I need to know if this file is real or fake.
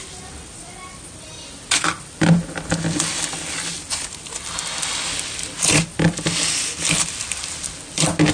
real